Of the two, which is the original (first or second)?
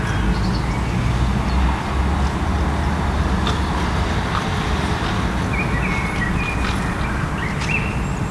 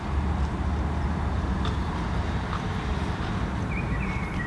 first